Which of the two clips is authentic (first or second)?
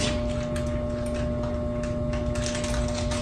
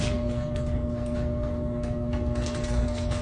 first